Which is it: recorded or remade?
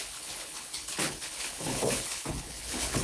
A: remade